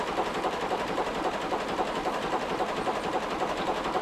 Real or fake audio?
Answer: real